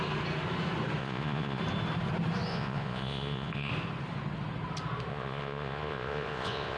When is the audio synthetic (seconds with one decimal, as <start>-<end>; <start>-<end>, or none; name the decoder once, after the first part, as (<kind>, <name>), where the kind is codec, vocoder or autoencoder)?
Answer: 1.0-1.6 (vocoder, Vocos); 2.5-3.7; 5.1-6.8